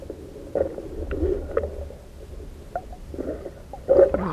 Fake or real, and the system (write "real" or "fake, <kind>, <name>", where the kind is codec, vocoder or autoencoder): real